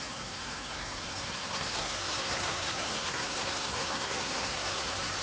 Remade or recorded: remade